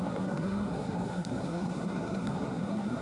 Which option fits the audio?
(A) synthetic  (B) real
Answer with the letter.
A